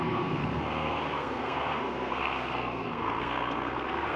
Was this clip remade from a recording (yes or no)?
yes